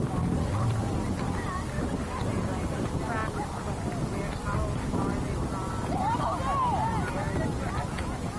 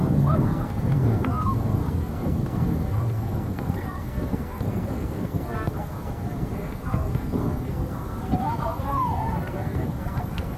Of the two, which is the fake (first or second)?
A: second